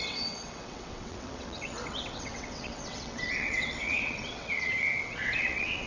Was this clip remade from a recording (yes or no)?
yes